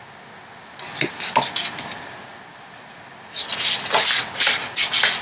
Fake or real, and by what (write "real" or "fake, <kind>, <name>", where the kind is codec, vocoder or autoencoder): real